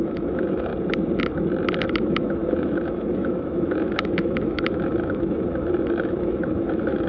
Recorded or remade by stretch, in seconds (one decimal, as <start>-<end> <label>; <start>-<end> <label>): 0.0-0.7 remade; 0.7-1.9 recorded; 1.9-7.1 remade

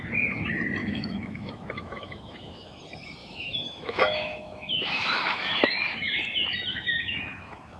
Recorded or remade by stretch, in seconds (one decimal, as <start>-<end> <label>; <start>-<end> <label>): 0.0-0.8 recorded; 0.8-2.8 remade; 2.8-3.2 recorded; 3.2-5.6 remade; 5.6-6.7 recorded; 6.7-7.8 remade

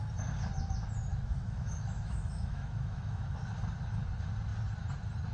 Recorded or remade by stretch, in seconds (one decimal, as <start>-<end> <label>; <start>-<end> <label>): 0.0-1.1 recorded; 1.1-3.5 remade; 3.5-5.3 recorded

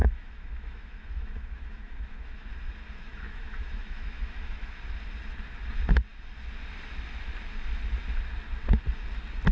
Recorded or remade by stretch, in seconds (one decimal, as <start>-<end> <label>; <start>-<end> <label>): 0.0-2.5 remade; 2.5-3.1 recorded; 3.1-4.7 remade; 4.7-9.5 recorded

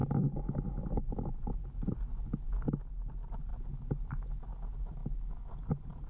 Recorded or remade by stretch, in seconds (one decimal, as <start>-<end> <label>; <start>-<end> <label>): 0.0-5.0 recorded; 5.0-5.5 remade; 5.5-6.1 recorded

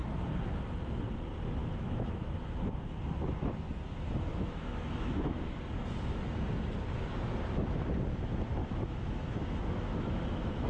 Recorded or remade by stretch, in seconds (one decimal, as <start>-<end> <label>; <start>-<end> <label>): 0.0-1.6 recorded; 1.6-2.7 remade; 2.7-4.3 recorded; 4.3-5.4 remade; 5.4-8.6 recorded; 8.6-10.7 remade